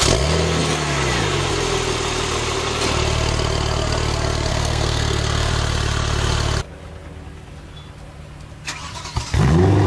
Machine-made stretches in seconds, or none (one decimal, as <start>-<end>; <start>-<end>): 4.5-5.5